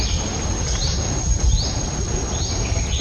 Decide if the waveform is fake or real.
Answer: real